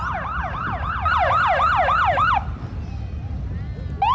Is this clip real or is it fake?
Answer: real